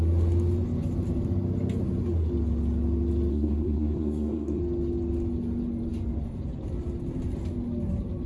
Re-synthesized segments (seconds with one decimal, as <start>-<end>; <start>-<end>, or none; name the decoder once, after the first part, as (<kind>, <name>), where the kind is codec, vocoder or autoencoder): 3.3-4.6 (codec, SNAC)